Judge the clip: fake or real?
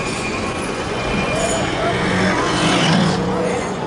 fake